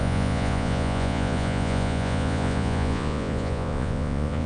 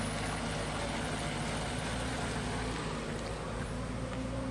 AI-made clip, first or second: first